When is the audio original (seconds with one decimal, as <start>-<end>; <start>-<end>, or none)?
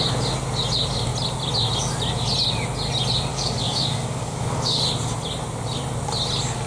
0.0-3.3; 4.8-6.7